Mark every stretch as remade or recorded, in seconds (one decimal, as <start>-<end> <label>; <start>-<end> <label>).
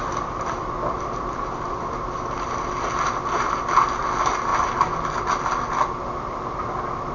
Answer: 0.0-7.1 recorded